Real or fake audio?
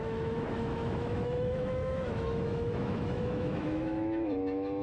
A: fake